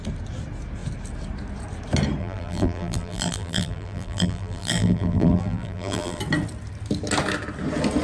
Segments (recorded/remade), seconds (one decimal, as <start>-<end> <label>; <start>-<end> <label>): 0.0-2.2 recorded; 2.2-6.2 remade; 6.2-8.0 recorded